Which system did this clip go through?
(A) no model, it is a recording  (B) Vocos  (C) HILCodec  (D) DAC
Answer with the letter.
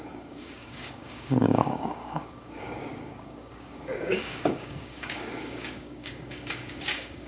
D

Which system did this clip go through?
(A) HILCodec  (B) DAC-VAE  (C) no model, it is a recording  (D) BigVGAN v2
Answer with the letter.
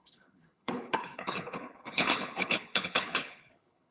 A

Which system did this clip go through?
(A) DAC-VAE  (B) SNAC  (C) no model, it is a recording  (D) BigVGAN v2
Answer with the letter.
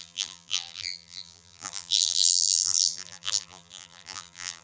D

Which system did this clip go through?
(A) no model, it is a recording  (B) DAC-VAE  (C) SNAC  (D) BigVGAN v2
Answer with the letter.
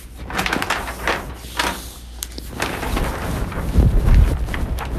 A